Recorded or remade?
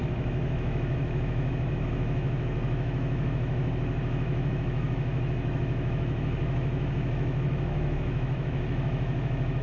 remade